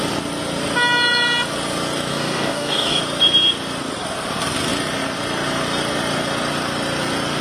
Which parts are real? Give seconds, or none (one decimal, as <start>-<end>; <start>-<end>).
0.0-2.1; 3.0-7.4